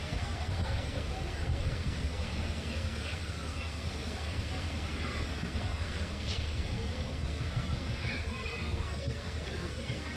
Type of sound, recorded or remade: remade